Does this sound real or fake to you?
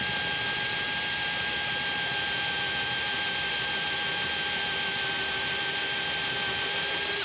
real